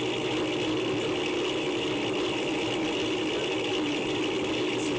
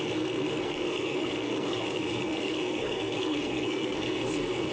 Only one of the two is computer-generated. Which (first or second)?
second